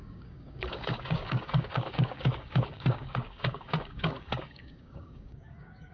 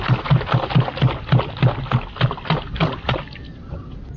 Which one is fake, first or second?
first